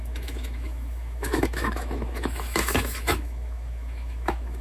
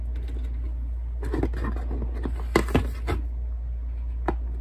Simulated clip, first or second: first